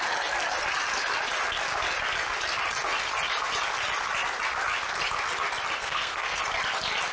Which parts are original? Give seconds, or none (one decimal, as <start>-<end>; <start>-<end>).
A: 0.0-5.8; 6.4-7.1